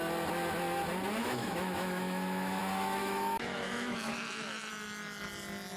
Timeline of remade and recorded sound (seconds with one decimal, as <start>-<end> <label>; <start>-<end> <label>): 0.0-1.2 recorded; 1.2-2.6 remade; 2.6-3.0 recorded; 3.0-4.7 remade; 4.7-5.8 recorded